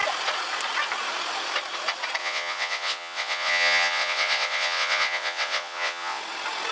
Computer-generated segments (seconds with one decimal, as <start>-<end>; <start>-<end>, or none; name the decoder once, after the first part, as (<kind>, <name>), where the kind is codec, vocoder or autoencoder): 2.2-6.2 (vocoder, WaveNeXt)